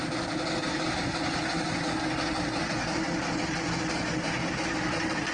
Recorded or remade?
recorded